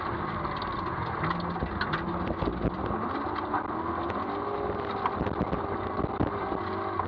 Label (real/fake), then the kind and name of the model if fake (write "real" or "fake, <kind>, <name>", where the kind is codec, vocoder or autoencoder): real